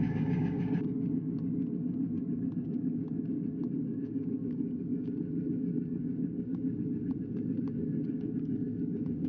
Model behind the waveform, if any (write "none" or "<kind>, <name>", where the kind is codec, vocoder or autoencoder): codec, DAC